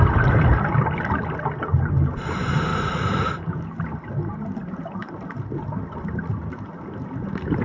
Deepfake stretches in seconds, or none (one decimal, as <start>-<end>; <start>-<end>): 2.7-3.5; 5.0-5.6